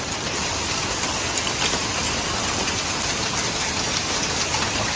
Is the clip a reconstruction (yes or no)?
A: no